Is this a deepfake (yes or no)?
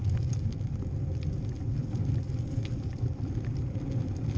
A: no